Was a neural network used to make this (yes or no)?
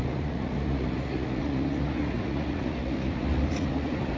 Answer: yes